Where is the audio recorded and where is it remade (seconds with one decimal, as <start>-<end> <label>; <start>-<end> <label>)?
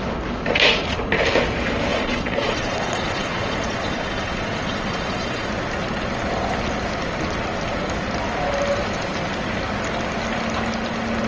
0.0-1.9 recorded; 1.9-5.5 remade; 5.5-11.3 recorded